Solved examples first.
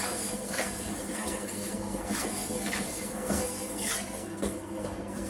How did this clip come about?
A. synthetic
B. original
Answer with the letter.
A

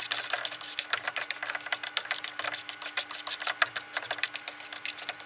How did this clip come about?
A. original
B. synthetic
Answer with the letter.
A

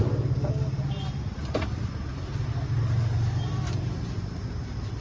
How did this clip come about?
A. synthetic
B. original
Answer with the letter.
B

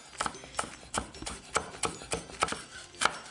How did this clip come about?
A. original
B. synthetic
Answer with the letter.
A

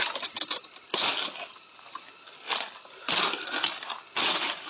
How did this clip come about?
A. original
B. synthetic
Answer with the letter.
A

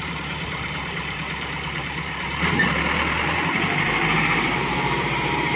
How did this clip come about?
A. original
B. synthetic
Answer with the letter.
B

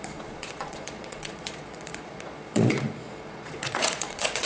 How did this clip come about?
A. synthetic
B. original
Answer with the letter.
A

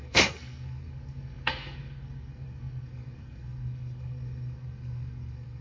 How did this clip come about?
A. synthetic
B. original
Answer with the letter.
A